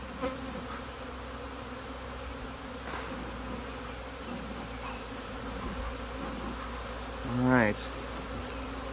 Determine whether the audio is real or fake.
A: real